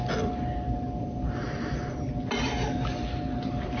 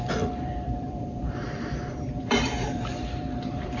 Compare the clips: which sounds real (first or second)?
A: first